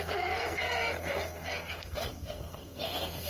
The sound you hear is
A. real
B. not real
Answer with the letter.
B